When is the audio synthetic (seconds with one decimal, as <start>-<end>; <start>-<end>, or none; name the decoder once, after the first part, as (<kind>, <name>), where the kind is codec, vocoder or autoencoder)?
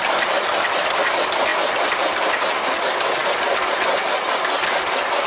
none